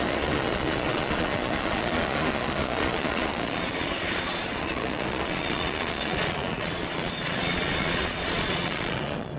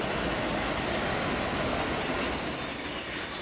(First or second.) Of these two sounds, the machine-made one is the first